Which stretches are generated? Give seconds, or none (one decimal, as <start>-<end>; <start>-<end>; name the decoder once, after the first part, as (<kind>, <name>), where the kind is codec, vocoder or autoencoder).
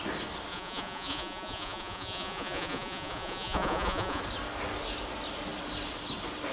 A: 0.5-4.2 (vocoder, Vocos)